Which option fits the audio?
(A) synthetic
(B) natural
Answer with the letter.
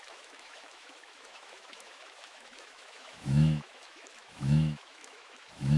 A